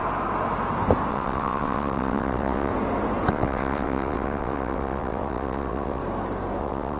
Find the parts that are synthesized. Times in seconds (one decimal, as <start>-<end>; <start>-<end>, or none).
1.1-2.7; 3.3-6.0; 6.6-7.0

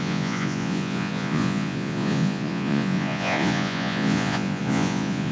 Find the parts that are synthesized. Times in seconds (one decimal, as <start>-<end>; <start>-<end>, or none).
0.0-5.3

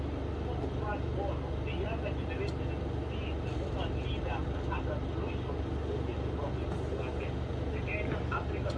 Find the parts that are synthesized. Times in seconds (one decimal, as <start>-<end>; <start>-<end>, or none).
none

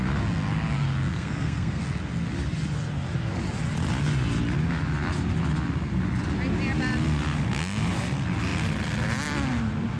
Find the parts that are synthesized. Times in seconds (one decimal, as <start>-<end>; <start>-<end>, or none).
1.1-1.8

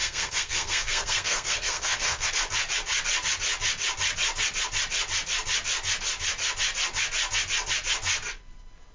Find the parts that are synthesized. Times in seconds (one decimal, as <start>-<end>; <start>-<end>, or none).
0.0-2.3

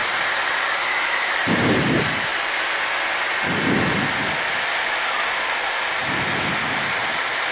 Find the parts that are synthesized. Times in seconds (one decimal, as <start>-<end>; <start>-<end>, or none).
0.0-2.3; 6.8-7.5